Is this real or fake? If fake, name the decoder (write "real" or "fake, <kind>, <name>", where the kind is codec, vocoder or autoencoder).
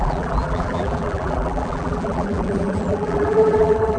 fake, vocoder, BigVGAN v2